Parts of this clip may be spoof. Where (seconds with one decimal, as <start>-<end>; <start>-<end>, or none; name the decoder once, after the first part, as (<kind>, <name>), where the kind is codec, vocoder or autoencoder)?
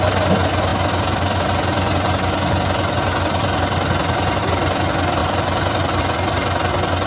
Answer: 5.2-6.0 (vocoder, BigVGAN v2)